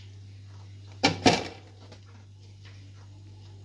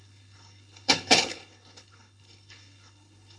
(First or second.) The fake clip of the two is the second